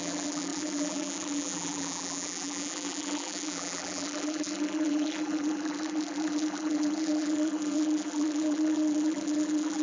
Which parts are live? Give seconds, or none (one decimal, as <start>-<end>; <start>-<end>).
none